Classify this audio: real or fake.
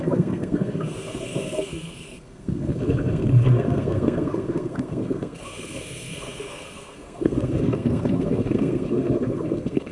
fake